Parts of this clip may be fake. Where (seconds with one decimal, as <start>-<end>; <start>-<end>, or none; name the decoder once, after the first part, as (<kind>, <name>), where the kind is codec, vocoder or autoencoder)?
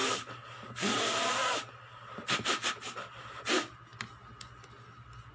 0.0-2.7 (vocoder, BigVGAN v2); 3.9-5.3